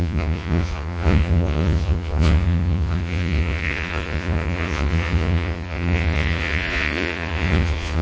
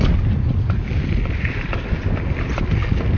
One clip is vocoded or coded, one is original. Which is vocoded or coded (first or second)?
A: first